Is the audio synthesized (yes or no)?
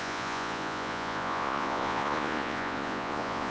yes